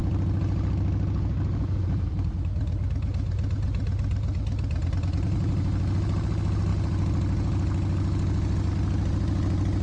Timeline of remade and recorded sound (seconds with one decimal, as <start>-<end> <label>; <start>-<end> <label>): 0.0-9.8 recorded